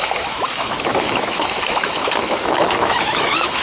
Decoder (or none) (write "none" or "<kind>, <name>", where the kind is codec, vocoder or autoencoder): autoencoder, DAC-VAE